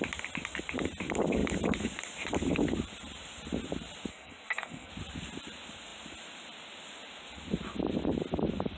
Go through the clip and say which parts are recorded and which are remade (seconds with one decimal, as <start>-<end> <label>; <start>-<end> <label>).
0.0-4.1 recorded; 4.1-4.9 remade; 4.9-8.8 recorded